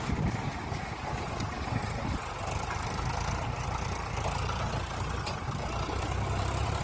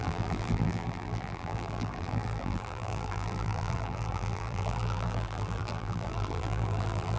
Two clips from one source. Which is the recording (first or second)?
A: first